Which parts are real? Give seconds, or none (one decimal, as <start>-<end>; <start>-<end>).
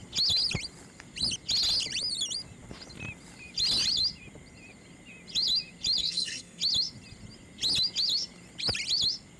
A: 0.0-6.0; 6.6-9.4